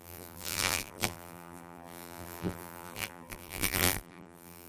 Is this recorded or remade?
remade